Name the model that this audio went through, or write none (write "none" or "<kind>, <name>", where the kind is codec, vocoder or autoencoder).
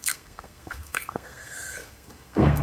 codec, SNAC